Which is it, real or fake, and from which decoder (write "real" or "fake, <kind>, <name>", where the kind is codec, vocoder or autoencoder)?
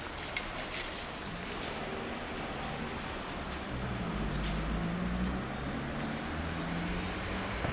real